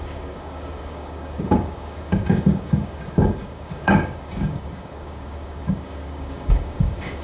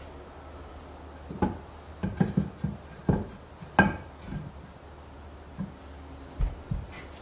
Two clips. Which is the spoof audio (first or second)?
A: first